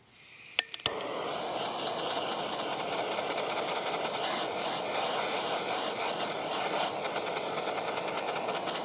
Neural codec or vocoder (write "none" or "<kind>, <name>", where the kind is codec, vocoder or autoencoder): none